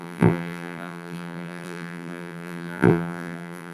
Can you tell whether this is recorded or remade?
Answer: remade